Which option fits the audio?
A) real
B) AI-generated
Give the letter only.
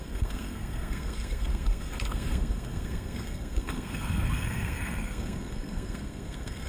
B